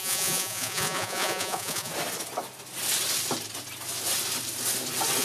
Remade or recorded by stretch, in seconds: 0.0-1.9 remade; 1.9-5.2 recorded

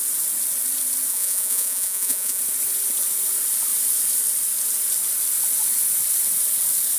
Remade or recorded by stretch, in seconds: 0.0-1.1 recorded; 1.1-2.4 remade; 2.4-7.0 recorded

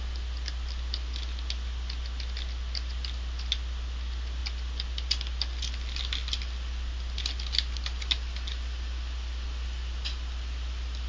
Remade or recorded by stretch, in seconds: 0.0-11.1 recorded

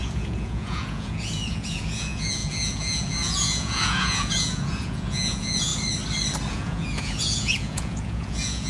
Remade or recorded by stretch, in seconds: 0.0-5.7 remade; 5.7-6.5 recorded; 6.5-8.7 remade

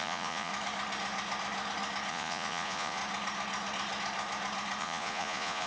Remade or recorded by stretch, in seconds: 0.0-0.5 remade; 0.5-2.1 recorded; 2.1-3.0 remade; 3.0-4.8 recorded; 4.8-5.7 remade

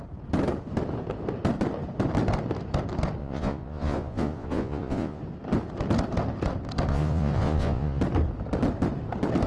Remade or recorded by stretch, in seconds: 0.0-3.2 recorded; 3.2-5.2 remade; 5.2-6.9 recorded; 6.9-8.0 remade; 8.0-9.5 recorded

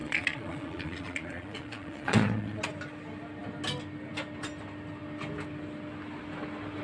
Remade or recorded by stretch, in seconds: 0.0-2.6 remade; 2.6-6.8 recorded